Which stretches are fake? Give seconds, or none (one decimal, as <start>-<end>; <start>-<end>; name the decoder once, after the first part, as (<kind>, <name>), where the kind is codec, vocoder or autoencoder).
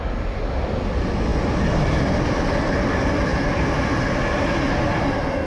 none